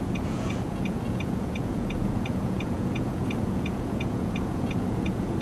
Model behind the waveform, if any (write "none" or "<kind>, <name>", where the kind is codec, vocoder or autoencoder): vocoder, Vocos